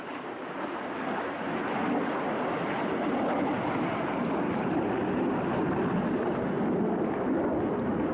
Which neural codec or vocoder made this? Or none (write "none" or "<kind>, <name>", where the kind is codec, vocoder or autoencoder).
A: none